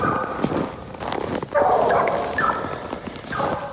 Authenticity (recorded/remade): remade